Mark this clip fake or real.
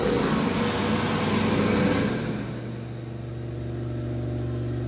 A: real